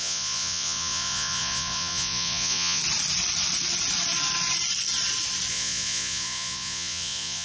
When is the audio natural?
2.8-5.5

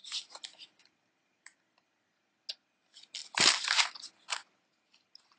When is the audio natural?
0.0-5.4